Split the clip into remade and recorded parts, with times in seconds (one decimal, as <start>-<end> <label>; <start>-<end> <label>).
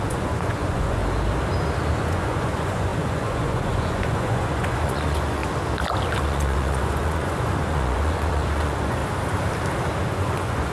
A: 0.0-1.0 remade; 1.0-2.0 recorded; 2.0-5.4 remade; 5.4-6.2 recorded; 6.2-9.0 remade; 9.0-10.0 recorded; 10.0-10.7 remade